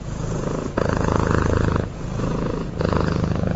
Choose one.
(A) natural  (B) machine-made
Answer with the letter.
B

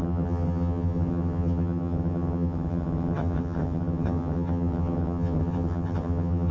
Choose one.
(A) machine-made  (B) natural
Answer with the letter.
A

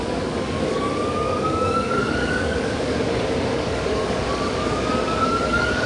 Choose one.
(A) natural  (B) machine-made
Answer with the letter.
B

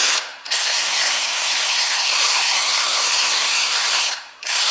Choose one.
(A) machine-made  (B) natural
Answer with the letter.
A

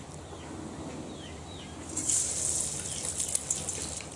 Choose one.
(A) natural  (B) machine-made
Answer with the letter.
A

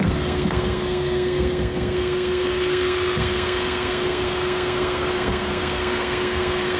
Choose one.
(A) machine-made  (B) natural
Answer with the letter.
A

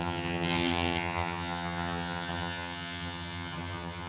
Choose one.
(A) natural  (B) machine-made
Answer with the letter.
B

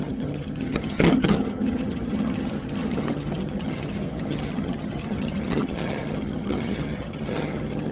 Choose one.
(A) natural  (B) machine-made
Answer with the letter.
B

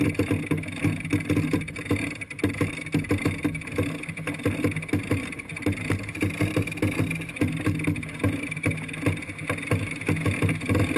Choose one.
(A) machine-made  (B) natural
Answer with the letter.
B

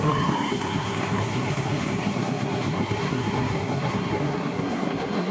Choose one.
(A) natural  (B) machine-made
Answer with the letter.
B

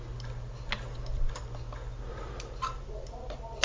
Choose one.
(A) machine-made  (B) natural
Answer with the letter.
B